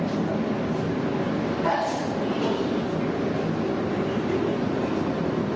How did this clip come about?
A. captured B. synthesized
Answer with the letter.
A